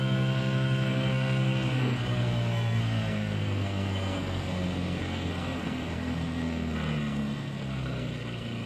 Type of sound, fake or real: fake